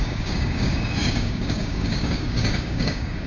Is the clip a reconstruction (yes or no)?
yes